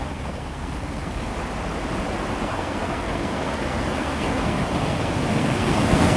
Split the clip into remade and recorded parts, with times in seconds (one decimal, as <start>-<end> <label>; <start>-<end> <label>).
0.0-1.3 remade; 1.3-2.4 recorded; 2.4-6.2 remade